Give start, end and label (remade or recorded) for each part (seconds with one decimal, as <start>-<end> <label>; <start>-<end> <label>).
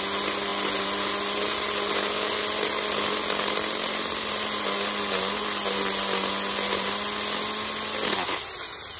0.0-9.0 recorded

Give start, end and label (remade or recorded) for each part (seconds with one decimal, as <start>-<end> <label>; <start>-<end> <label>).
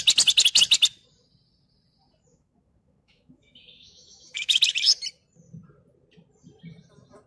0.0-2.3 recorded; 2.3-4.6 remade; 4.6-7.3 recorded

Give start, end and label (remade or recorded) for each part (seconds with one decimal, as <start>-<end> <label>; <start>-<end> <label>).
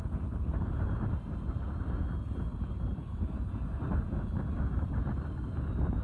0.0-6.0 recorded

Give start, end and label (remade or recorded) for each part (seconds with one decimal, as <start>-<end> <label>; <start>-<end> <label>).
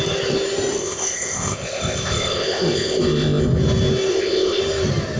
0.0-0.8 recorded; 0.8-3.6 remade; 3.6-4.1 recorded; 4.1-4.6 remade; 4.6-5.2 recorded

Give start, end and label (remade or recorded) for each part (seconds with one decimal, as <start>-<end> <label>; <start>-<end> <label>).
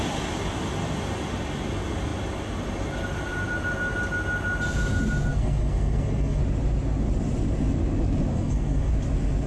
0.0-5.3 recorded; 5.3-6.4 remade; 6.4-8.3 recorded; 8.3-8.9 remade; 8.9-9.5 recorded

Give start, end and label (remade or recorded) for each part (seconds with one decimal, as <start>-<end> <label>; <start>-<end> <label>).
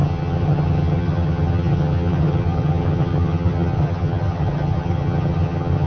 0.0-5.9 remade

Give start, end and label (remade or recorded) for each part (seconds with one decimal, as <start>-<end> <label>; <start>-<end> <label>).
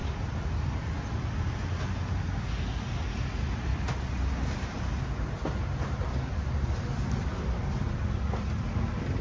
0.0-9.2 recorded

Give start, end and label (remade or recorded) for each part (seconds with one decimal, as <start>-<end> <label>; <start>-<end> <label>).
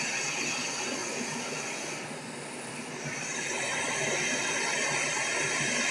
0.0-5.9 recorded